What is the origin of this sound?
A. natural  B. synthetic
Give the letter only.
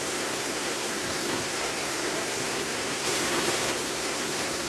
B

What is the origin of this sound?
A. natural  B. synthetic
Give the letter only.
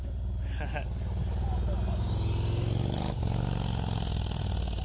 A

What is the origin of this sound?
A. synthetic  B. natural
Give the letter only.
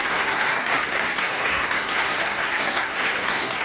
A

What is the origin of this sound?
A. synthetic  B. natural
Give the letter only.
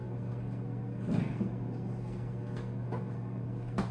A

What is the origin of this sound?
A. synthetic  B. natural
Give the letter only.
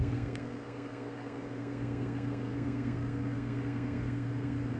A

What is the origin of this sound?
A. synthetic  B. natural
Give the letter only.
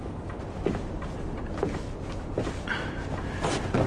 B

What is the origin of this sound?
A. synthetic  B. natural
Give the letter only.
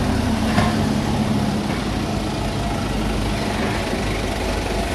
B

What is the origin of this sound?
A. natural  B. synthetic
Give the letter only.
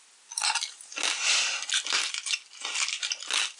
A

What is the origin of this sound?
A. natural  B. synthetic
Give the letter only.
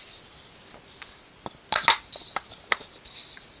A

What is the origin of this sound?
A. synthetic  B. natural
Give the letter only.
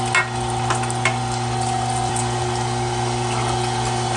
B